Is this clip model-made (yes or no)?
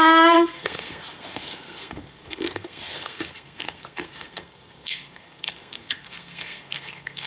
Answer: yes